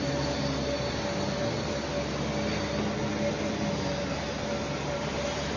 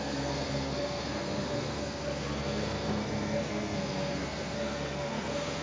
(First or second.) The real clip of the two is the first